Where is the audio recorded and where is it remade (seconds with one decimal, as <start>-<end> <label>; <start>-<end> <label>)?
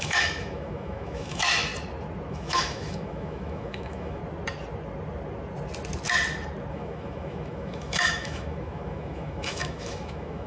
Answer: 0.0-1.7 remade; 1.7-2.3 recorded; 2.3-4.2 remade; 4.2-6.7 recorded; 6.7-10.5 remade